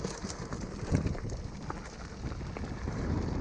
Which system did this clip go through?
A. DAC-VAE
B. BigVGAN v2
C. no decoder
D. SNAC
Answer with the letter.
C